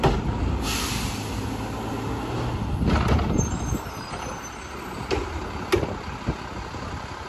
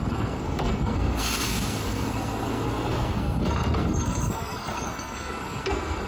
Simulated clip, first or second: second